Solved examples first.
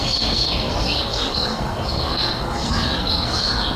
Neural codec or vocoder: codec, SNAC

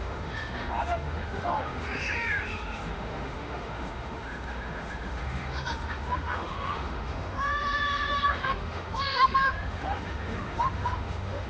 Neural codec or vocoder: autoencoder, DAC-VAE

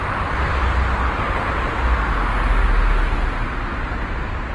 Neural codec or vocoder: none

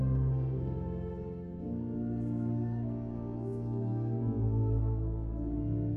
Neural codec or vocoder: codec, SNAC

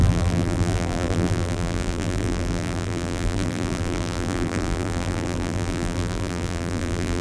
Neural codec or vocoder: vocoder, BigVGAN v2